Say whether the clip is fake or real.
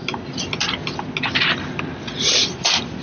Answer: real